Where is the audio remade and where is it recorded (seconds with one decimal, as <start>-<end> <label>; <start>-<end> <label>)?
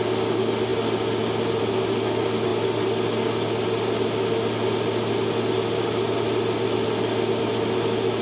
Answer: 0.0-8.2 recorded